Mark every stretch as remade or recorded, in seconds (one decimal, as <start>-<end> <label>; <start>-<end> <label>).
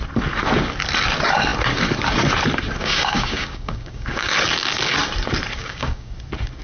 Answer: 0.0-2.8 recorded; 2.8-4.3 remade; 4.3-5.6 recorded; 5.6-6.1 remade; 6.1-6.6 recorded